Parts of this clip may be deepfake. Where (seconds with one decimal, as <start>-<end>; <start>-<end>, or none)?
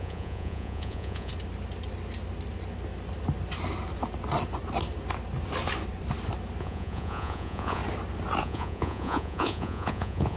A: 0.0-1.3; 6.6-7.8; 8.4-10.4